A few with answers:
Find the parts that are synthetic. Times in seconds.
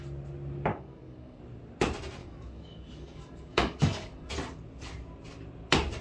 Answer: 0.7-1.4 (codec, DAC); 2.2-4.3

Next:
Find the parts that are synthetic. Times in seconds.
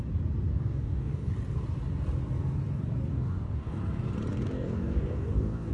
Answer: 0.5-1.3 (codec, DAC); 3.1-3.8; 4.3-5.7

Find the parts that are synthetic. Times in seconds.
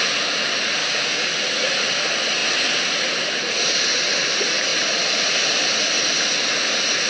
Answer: 0.8-1.3 (codec, DAC)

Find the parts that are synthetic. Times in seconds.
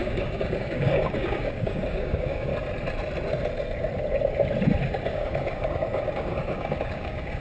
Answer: 0.0-2.5 (codec, DAC); 5.1-7.4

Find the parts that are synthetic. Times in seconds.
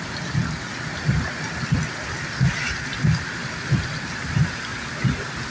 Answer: none